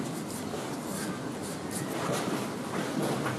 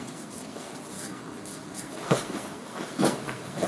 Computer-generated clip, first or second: second